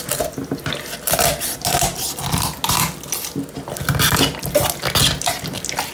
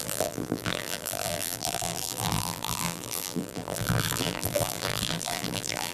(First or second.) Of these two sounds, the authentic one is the first